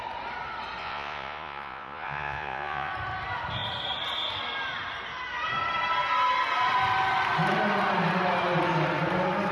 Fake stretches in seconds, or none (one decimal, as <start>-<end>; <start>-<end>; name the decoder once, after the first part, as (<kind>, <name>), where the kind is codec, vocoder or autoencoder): 0.8-2.9 (vocoder, Vocos)